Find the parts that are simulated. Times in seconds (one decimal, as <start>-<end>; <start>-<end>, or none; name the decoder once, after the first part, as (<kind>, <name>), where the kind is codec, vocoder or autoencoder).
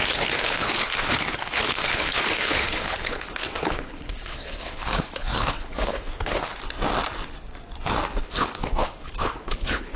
0.0-6.5 (codec, HILCodec); 8.2-10.0